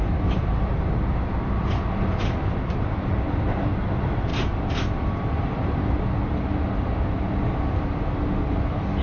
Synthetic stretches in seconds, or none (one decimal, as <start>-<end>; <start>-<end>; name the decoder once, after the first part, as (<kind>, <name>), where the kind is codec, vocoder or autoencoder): none

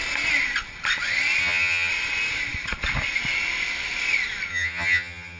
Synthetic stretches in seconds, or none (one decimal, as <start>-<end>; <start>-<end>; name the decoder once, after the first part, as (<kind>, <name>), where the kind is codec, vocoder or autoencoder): 1.4-1.9 (vocoder, HiFi-GAN); 4.5-5.4

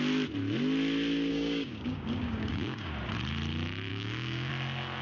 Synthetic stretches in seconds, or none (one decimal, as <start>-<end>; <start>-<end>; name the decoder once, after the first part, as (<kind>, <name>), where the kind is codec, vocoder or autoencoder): 1.3-2.9 (codec, DAC); 3.9-4.5

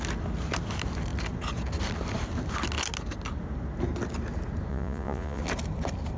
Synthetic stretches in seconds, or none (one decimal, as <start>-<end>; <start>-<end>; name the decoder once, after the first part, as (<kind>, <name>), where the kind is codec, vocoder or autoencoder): 4.7-5.4 (vocoder, Vocos)

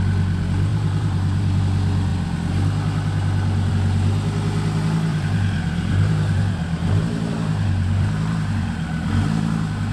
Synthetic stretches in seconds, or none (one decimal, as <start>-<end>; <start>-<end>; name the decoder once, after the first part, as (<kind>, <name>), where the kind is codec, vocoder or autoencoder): 0.7-1.6 (vocoder, BigVGAN v2); 5.1-9.4

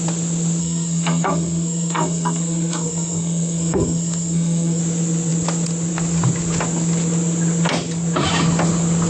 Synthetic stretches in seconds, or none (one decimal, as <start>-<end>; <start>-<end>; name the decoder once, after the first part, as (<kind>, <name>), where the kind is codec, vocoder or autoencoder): 0.6-4.8 (codec, SNAC)

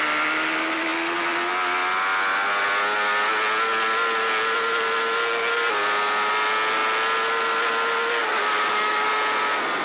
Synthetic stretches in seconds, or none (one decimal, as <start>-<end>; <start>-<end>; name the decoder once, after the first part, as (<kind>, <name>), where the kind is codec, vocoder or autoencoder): 8.2-9.1 (codec, DAC)